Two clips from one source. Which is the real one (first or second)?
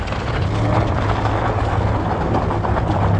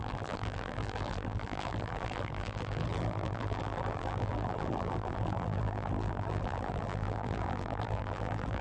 first